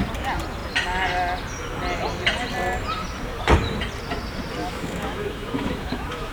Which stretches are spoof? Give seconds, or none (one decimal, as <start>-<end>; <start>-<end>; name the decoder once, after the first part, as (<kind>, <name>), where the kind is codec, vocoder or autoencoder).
4.6-6.3 (autoencoder, DAC-VAE)